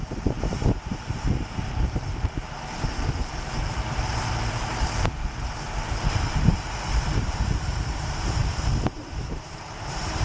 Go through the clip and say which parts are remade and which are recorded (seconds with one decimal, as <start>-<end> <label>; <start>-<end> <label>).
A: 0.0-8.4 remade; 8.4-9.0 recorded; 9.0-10.2 remade